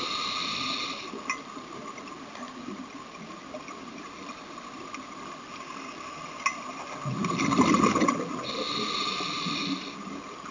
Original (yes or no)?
yes